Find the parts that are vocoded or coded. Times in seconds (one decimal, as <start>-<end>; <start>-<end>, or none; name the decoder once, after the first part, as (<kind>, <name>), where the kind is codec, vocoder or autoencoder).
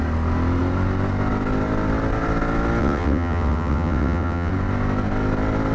2.8-4.5 (vocoder, WaveNeXt)